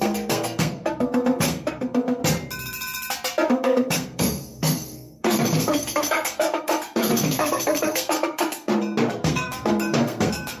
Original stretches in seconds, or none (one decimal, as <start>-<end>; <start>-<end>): 2.2-3.5; 8.7-9.2